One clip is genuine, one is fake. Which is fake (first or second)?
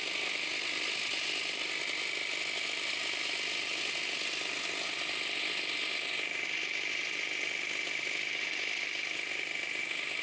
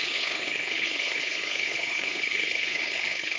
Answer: second